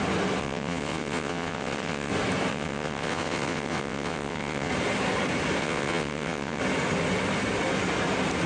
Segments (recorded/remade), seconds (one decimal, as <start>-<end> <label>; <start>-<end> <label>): 0.0-0.4 recorded; 0.4-2.1 remade; 2.1-2.5 recorded; 2.5-4.7 remade; 4.7-5.6 recorded; 5.6-6.6 remade; 6.6-8.5 recorded